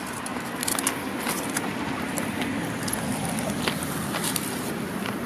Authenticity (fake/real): real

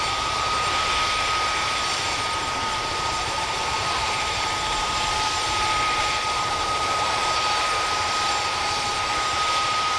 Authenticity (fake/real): fake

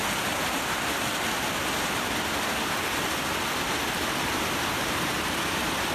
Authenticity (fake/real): real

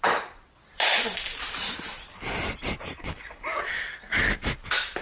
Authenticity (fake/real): fake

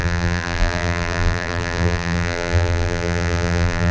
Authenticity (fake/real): fake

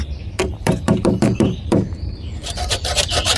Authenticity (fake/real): fake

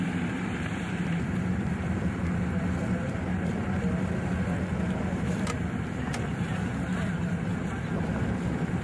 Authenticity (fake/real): fake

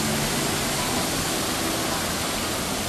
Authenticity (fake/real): real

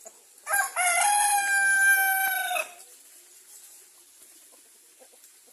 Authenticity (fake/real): real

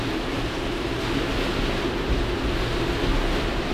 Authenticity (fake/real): real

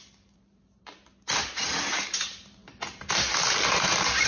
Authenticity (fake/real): fake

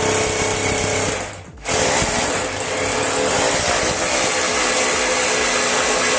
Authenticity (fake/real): real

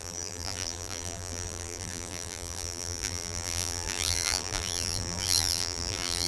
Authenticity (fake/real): fake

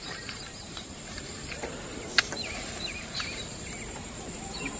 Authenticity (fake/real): fake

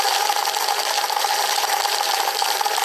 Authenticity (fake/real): fake